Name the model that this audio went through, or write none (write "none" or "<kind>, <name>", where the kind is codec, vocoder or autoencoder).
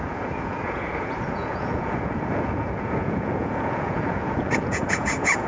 vocoder, Vocos